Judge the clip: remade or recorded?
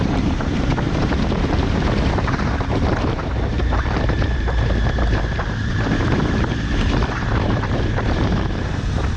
remade